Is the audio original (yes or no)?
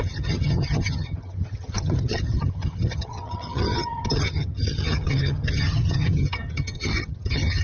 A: no